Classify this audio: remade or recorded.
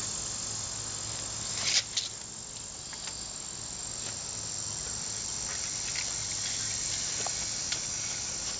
recorded